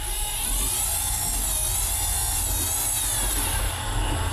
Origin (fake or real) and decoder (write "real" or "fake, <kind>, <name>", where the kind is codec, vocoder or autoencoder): real